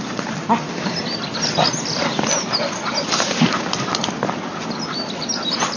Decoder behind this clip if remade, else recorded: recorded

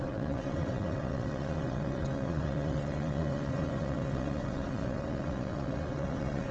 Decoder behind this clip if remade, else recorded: remade, vocoder, WaveNeXt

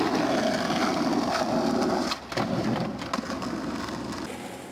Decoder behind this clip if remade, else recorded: recorded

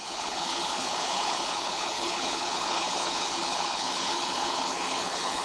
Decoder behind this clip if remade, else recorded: remade, codec, HILCodec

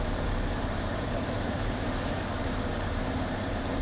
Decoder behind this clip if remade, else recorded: remade, vocoder, BigVGAN v2